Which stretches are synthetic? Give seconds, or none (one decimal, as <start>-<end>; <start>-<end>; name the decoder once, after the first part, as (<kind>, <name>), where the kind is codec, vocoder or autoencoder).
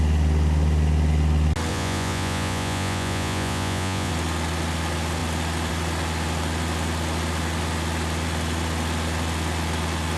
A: 1.7-4.1 (vocoder, Vocos)